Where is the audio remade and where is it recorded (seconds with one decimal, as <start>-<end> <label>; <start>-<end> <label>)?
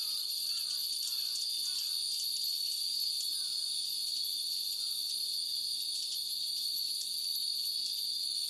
0.0-3.3 remade; 3.3-4.1 recorded; 4.1-8.5 remade